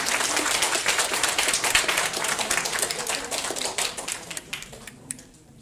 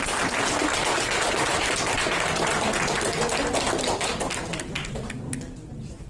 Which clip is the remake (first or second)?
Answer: first